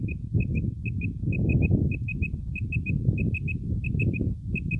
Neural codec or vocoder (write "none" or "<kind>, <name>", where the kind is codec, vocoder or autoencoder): none